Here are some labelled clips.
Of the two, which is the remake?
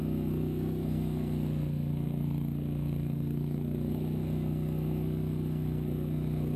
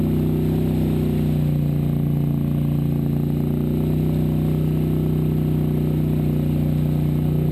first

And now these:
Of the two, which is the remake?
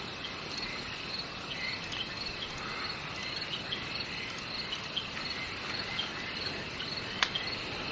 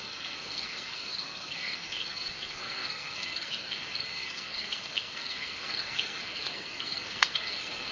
second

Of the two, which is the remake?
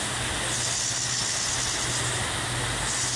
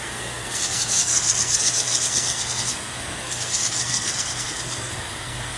second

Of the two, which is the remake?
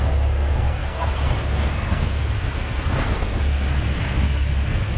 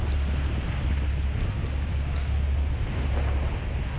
first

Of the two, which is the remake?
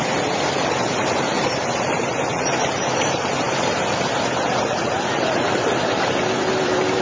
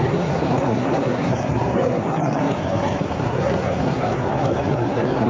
second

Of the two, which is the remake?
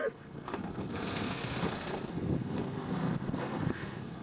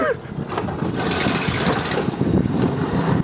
first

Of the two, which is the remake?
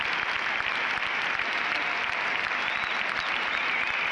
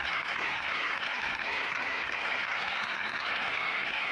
second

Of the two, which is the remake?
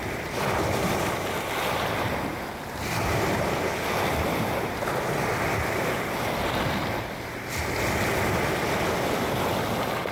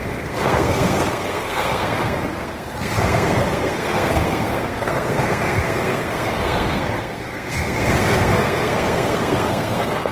second